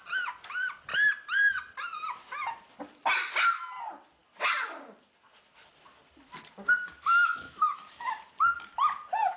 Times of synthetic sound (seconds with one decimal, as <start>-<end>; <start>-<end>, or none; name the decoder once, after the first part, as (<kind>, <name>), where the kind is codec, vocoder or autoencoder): 7.1-8.2 (autoencoder, DAC-VAE)